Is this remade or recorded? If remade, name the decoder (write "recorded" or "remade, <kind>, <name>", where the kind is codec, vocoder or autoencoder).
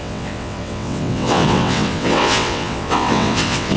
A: remade, vocoder, WaveNeXt